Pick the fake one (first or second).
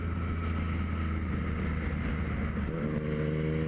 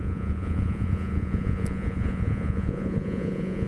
second